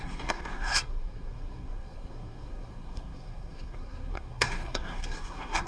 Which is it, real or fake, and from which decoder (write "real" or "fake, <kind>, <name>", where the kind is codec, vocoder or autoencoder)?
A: fake, codec, SNAC